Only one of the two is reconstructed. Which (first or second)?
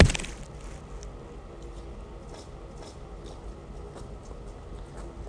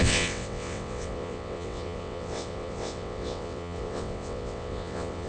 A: second